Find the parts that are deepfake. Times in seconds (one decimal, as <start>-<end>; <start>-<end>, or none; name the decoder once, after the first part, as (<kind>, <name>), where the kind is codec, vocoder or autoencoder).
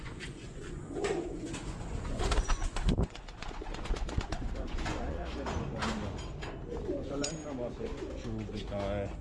0.0-5.8 (vocoder, Vocos); 6.9-7.4